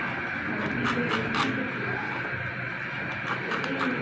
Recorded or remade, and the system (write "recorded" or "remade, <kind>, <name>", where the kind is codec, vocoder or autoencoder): recorded